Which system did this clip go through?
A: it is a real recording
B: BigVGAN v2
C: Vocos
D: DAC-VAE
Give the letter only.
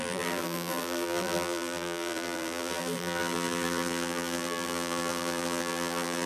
B